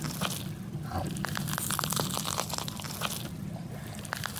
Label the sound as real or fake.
real